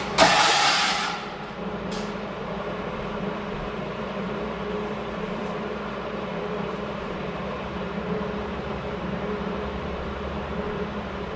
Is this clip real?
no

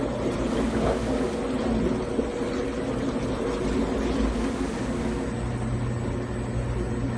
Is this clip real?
yes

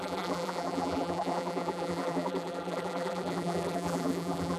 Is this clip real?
no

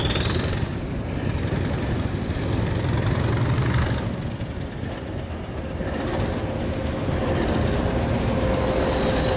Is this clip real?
yes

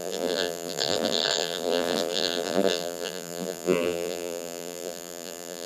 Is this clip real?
no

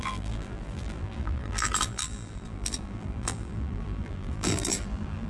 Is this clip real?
no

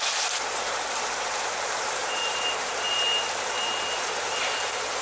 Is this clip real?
no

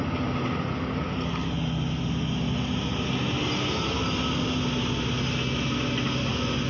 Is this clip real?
yes